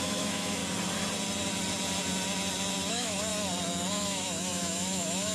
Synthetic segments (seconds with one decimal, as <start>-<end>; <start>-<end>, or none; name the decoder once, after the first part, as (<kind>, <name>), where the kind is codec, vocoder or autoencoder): 0.0-0.6 (autoencoder, DAC-VAE); 2.9-3.3; 3.9-5.3